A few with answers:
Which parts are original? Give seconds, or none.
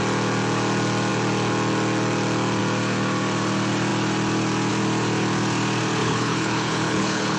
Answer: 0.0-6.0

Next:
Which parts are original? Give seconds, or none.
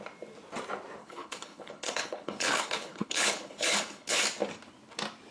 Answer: 0.0-1.0; 4.2-5.3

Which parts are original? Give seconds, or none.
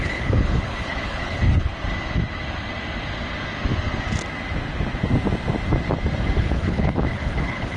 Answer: 1.7-6.4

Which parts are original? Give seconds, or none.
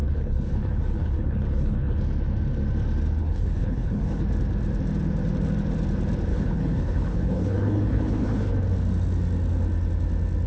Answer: 2.0-3.2; 4.2-6.3; 8.5-10.5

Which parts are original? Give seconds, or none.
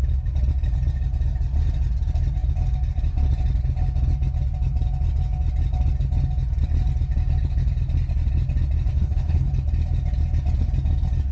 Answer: 0.0-8.9; 9.5-11.3